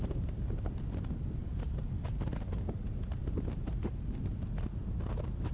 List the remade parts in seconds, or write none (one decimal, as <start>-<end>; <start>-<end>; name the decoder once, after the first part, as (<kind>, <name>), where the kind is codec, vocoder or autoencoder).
none